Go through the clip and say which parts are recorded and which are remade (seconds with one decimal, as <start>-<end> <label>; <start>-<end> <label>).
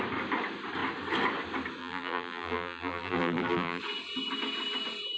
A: 0.0-1.8 recorded; 1.8-3.8 remade; 3.8-5.2 recorded